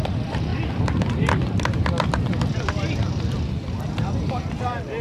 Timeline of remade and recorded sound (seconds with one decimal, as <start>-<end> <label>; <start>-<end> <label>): 0.0-5.0 recorded

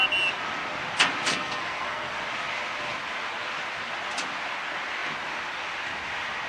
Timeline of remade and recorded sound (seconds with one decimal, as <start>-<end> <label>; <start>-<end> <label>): 0.0-1.3 recorded; 1.3-2.1 remade; 2.1-6.5 recorded

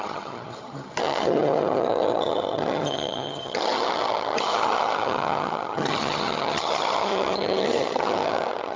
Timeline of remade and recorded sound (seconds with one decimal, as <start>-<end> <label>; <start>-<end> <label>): 0.0-8.8 remade